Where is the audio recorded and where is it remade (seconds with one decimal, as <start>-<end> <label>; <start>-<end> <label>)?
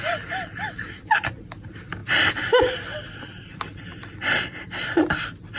0.0-5.6 recorded